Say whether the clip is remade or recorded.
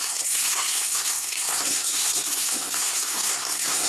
remade